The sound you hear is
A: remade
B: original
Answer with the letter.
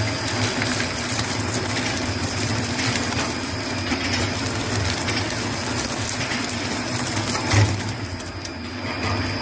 B